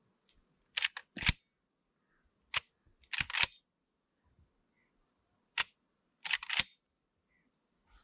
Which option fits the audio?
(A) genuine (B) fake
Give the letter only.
A